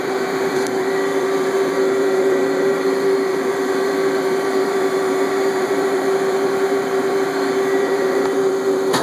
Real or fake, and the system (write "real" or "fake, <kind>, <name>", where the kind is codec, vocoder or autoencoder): fake, vocoder, BigVGAN v2